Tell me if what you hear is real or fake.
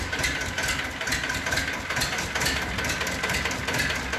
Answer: real